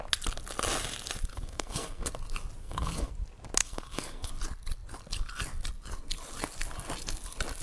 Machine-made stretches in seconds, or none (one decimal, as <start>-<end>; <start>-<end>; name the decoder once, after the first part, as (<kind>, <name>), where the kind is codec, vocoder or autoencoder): 1.3-2.1 (codec, SNAC); 2.6-3.1; 3.6-4.3